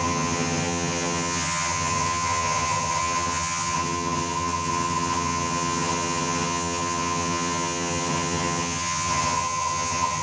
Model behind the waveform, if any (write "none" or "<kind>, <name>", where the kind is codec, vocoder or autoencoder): vocoder, HiFi-GAN